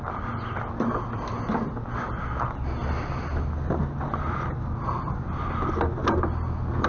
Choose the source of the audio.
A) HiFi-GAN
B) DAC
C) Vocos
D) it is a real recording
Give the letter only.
D